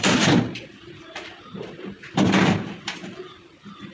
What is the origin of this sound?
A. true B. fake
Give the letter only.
B